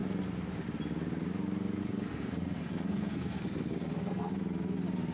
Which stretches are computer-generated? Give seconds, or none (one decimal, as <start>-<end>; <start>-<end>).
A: 1.8-4.3

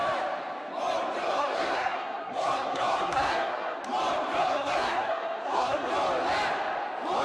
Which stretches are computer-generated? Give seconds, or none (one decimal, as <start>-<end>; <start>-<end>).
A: 1.2-3.8; 4.4-5.9

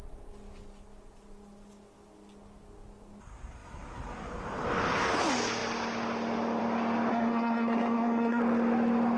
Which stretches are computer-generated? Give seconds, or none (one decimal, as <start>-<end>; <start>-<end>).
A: 7.1-8.4